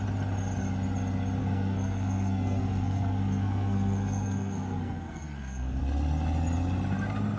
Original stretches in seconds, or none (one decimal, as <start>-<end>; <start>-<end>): 0.0-1.4; 5.8-7.4